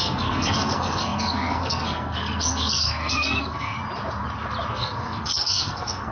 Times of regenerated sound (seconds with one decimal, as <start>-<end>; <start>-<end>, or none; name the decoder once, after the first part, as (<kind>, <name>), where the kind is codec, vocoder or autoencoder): 0.0-3.8 (codec, SNAC); 4.7-6.1